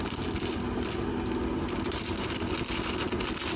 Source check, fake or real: real